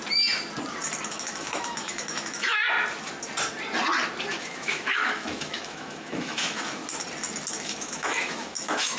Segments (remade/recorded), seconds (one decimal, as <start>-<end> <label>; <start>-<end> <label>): 0.0-1.1 recorded; 1.1-2.6 remade; 2.6-4.3 recorded; 4.3-6.8 remade; 6.8-7.5 recorded; 7.5-9.0 remade